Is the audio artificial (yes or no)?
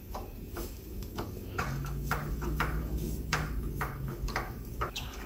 yes